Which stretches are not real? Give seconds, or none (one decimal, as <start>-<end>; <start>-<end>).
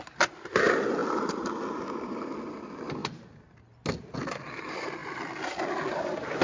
0.0-3.0; 4.6-6.4